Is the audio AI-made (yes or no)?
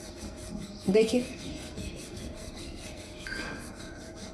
yes